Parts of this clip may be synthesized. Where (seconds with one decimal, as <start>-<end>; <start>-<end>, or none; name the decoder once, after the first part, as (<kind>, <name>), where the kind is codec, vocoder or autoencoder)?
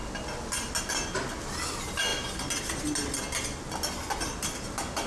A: none